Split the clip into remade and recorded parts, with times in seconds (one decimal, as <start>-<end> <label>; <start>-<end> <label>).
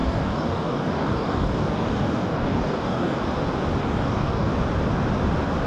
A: 0.0-3.2 remade; 3.2-3.8 recorded; 3.8-4.5 remade; 4.5-5.7 recorded